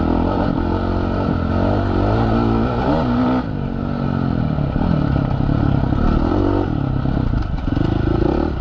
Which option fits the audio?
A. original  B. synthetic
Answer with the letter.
A